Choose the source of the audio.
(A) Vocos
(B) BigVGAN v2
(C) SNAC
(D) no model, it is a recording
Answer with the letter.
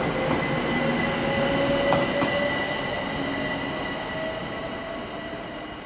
D